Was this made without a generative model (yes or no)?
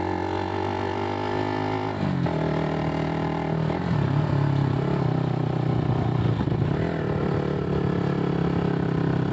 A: yes